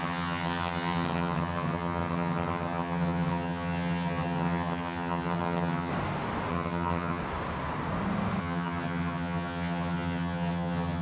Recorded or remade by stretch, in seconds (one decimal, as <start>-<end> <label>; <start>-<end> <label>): 0.0-5.9 remade; 5.9-6.5 recorded; 6.5-7.2 remade; 7.2-8.4 recorded; 8.4-11.0 remade